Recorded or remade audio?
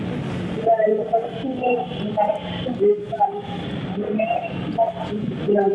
recorded